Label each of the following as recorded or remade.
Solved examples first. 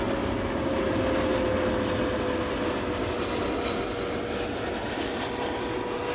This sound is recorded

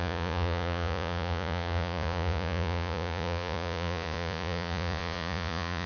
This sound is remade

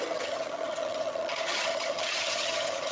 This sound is remade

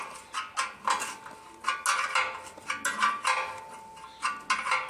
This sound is recorded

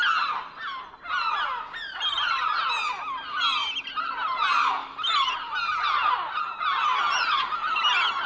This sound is recorded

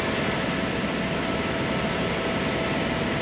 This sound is recorded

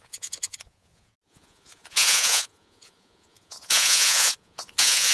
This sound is remade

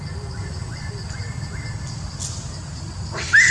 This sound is recorded